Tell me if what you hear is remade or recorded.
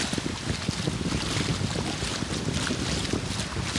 recorded